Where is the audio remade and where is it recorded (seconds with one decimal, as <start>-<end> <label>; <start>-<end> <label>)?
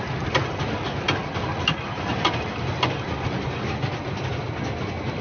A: 0.0-5.2 recorded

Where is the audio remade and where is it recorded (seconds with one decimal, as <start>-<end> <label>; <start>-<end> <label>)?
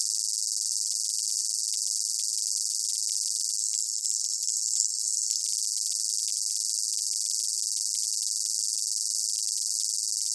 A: 0.0-3.6 recorded; 3.6-5.4 remade; 5.4-10.3 recorded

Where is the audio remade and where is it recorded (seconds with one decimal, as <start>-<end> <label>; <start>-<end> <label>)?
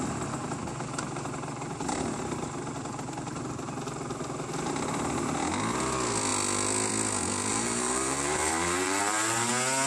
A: 0.0-0.4 recorded; 0.4-3.5 remade; 3.5-7.5 recorded; 7.5-9.5 remade; 9.5-9.9 recorded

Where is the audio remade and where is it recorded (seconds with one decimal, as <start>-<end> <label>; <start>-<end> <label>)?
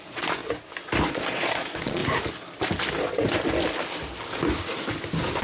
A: 0.0-0.4 remade; 0.4-1.1 recorded; 1.1-2.0 remade; 2.0-5.4 recorded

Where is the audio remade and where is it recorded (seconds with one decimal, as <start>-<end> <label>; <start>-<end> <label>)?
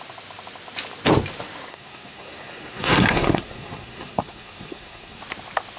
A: 0.0-1.7 recorded; 1.7-5.2 remade; 5.2-5.8 recorded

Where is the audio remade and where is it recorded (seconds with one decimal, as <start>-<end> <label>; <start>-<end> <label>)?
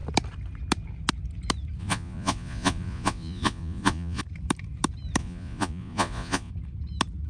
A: 0.0-1.8 recorded; 1.8-4.2 remade; 4.2-5.2 recorded; 5.2-6.5 remade; 6.5-7.3 recorded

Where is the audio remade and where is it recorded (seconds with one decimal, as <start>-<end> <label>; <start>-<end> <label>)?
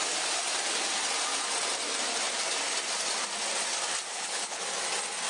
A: 0.0-4.1 recorded; 4.1-4.6 remade; 4.6-5.3 recorded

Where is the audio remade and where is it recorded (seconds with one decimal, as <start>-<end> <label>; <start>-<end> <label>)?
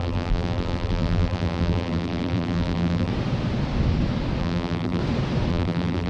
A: 0.0-3.1 remade; 3.1-4.4 recorded; 4.4-5.0 remade; 5.0-5.5 recorded; 5.5-6.1 remade